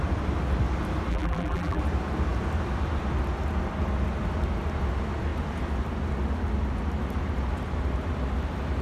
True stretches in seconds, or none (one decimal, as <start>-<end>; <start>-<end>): 0.0-1.1; 1.8-8.8